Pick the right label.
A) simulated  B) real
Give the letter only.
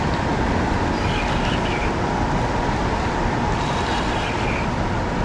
B